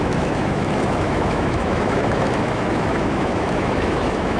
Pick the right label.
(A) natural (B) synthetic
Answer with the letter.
B